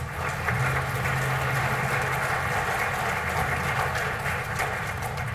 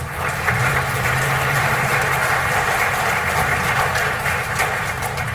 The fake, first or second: second